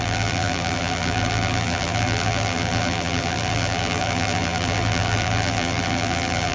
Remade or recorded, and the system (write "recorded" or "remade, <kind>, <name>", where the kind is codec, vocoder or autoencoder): remade, vocoder, BigVGAN v2